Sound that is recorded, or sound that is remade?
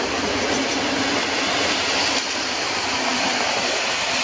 recorded